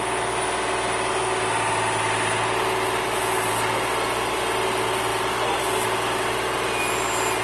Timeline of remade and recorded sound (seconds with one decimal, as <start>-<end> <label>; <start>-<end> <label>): 0.0-7.4 recorded